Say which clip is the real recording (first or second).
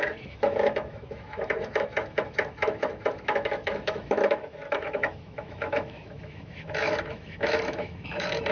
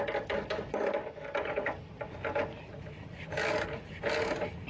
second